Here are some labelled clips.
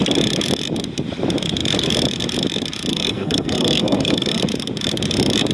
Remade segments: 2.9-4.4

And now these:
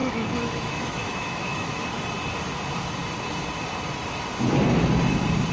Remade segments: 0.0-1.8

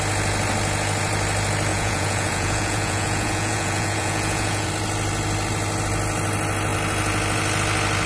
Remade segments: 1.7-4.7

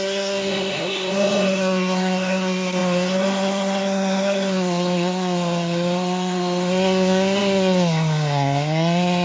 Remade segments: 0.0-9.2

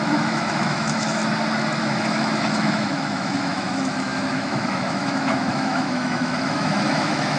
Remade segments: 0.0-1.2; 1.8-7.4

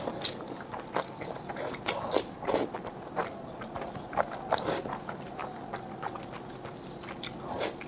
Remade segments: none

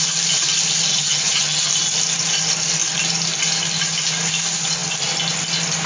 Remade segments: 0.9-1.7

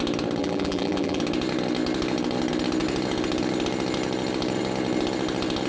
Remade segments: 0.4-1.2